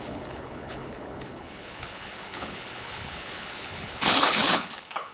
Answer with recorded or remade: remade